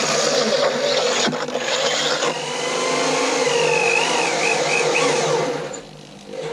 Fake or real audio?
real